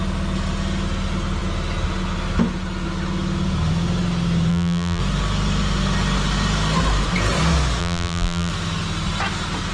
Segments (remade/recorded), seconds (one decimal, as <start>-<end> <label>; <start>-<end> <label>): 0.0-4.5 recorded; 4.5-5.0 remade; 5.0-7.8 recorded; 7.8-8.5 remade; 8.5-9.7 recorded